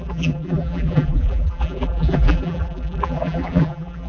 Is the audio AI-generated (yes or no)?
yes